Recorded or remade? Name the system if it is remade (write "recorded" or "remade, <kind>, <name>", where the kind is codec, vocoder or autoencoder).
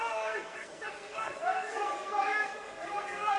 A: remade, codec, SNAC